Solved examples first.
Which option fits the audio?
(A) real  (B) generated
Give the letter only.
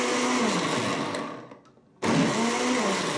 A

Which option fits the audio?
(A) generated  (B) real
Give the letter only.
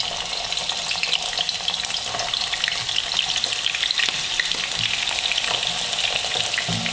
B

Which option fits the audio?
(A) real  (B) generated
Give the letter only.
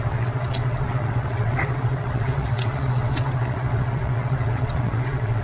B